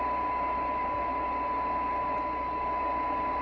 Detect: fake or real real